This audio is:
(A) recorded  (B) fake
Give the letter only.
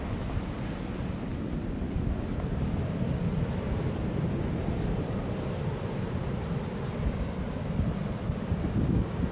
A